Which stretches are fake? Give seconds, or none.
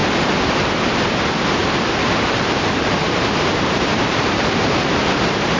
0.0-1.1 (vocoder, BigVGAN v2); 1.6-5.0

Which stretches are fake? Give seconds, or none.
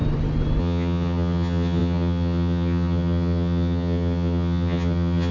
0.6-5.3 (vocoder, HiFi-GAN)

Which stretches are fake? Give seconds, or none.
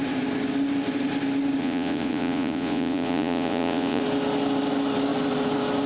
1.6-4.0 (vocoder, Vocos)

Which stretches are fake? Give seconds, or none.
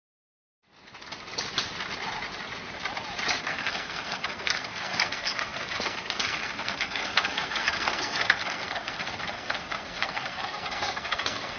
0.0-0.5 (codec, SNAC); 3.4-11.6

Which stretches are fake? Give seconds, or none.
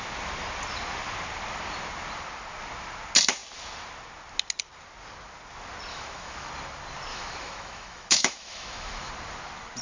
5.9-6.5 (autoencoder, DAC-VAE); 7.1-9.1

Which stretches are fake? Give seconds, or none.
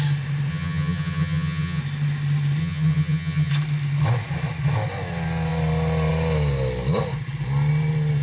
0.5-1.8 (vocoder, HiFi-GAN); 2.6-3.5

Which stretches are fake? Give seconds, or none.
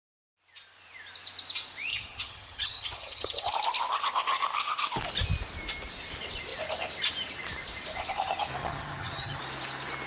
1.9-3.5 (vocoder, HiFi-GAN); 8.6-9.4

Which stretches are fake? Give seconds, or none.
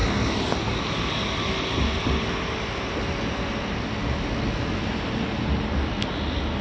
none